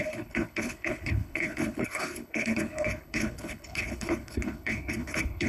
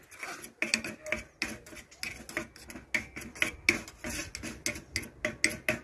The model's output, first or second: first